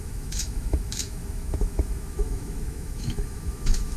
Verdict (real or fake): fake